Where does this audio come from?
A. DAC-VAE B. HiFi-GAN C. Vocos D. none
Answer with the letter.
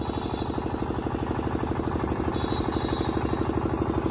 D